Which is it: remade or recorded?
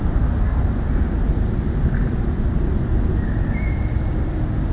recorded